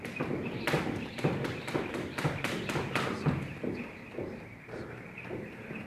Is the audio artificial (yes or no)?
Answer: yes